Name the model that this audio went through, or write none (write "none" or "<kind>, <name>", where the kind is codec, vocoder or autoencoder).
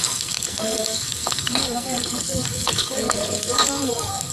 codec, SNAC